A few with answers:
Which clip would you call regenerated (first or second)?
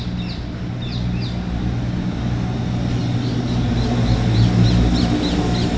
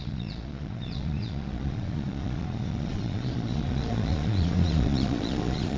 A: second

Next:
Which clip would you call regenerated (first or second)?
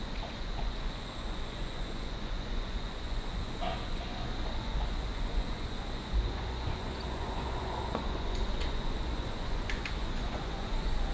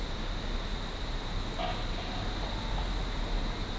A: first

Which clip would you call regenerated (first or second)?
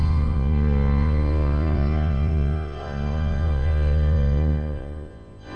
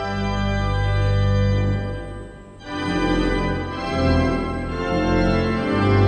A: first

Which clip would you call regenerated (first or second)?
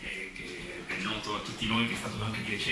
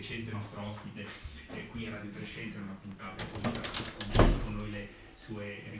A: first